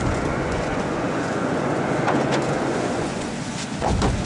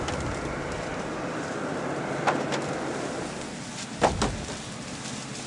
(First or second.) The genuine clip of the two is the second